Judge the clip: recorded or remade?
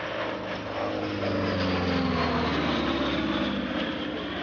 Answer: recorded